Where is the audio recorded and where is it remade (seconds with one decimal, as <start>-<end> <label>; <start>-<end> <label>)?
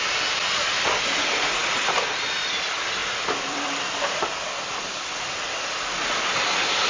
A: 0.0-3.0 recorded; 3.0-4.3 remade; 4.3-6.9 recorded